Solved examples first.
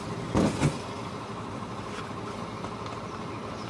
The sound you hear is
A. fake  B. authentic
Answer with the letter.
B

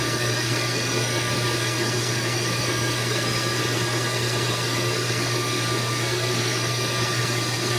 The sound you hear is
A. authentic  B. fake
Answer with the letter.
B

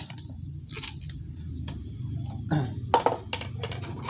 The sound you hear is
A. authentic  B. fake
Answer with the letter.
A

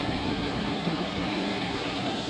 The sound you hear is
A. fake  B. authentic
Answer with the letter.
A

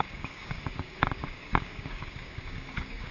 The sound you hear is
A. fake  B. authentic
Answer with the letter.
A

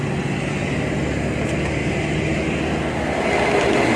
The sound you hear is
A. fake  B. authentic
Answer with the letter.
B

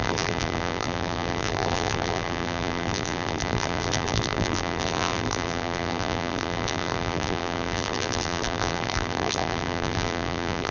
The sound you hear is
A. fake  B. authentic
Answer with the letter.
A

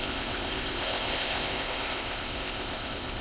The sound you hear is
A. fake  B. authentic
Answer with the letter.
A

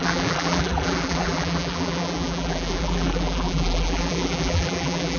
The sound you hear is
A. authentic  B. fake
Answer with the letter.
B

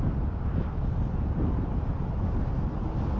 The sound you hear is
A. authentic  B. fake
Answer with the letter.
A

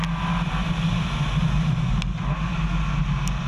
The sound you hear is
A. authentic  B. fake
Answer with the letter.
A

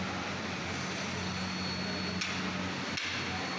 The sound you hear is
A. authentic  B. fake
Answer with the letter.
A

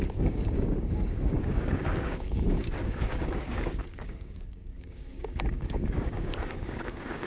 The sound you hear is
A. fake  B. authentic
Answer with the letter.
A